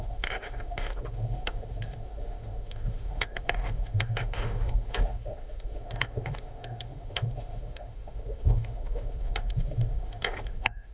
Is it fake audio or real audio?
fake